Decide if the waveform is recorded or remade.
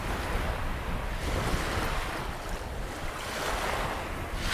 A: recorded